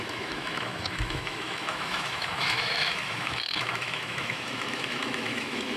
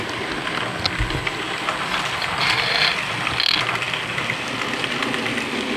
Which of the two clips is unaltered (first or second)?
second